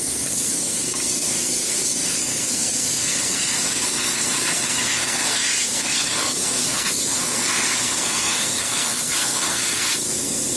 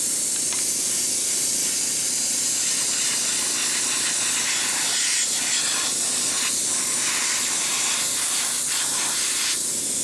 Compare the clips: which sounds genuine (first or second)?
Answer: second